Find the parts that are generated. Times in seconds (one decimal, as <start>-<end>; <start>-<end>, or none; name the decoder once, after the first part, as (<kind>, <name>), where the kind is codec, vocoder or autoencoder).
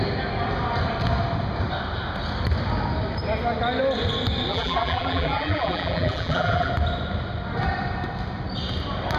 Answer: 4.5-6.7 (vocoder, BigVGAN v2)